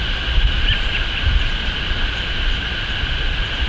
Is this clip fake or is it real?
real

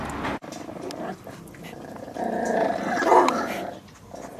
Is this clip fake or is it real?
real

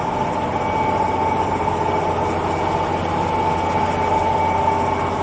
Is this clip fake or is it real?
real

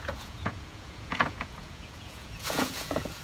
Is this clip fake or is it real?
fake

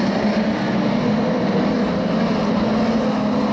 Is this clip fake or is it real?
real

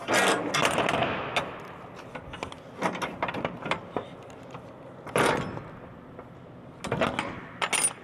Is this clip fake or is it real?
real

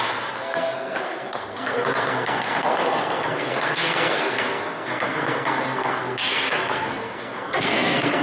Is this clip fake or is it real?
fake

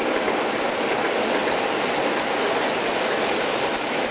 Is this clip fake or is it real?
fake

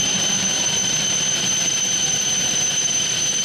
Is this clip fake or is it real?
fake